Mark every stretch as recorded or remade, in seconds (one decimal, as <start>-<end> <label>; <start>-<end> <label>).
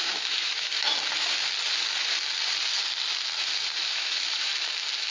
0.0-0.7 remade; 0.7-3.8 recorded; 3.8-4.5 remade; 4.5-5.1 recorded